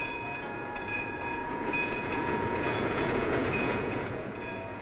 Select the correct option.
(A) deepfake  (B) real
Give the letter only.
A